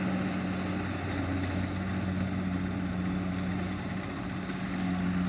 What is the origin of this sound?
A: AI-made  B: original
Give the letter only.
B